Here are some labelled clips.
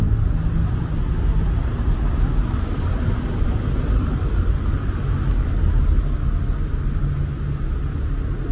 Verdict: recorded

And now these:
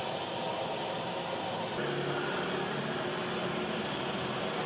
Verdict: recorded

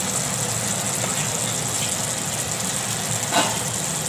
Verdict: recorded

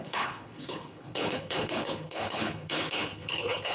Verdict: remade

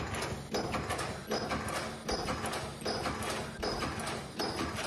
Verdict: recorded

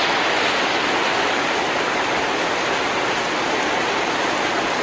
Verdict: recorded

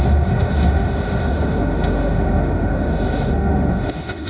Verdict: remade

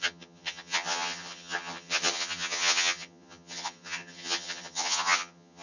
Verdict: remade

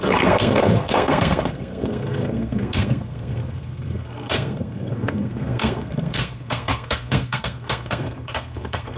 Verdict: remade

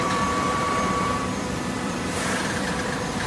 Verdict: remade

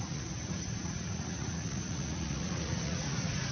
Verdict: remade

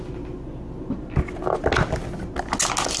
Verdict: recorded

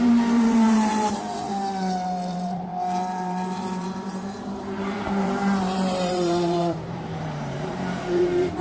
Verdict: remade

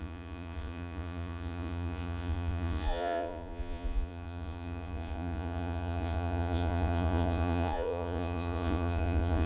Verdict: remade